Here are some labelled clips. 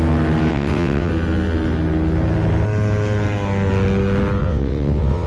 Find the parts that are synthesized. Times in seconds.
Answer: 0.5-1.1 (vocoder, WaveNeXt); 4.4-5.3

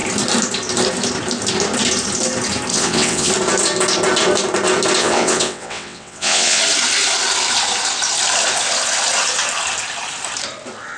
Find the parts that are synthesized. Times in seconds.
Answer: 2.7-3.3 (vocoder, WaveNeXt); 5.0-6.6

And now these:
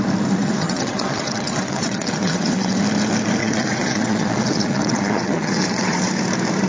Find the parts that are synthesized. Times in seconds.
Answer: 0.4-2.8 (vocoder, WaveNeXt); 3.4-6.1